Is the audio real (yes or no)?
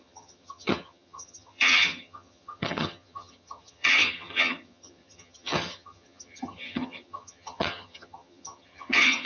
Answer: no